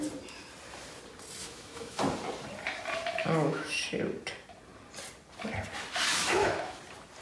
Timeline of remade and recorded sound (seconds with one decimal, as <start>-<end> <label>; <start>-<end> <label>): 0.0-1.4 recorded; 1.4-2.0 remade; 2.0-3.2 recorded; 3.2-3.8 remade; 3.8-6.1 recorded; 6.1-6.8 remade; 6.8-7.2 recorded